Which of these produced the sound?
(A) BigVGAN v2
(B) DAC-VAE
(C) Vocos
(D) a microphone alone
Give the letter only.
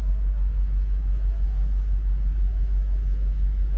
B